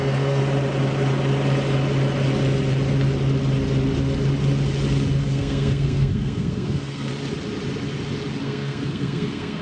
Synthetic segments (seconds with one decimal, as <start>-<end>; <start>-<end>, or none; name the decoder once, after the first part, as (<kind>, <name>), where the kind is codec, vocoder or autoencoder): 0.0-0.4 (codec, SNAC); 5.2-7.1; 8.4-9.6